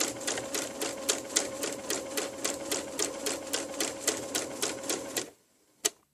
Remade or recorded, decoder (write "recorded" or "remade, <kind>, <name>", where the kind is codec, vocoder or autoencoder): recorded